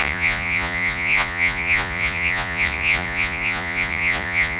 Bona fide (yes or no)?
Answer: no